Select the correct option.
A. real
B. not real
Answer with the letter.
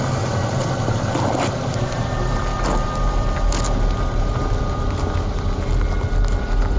A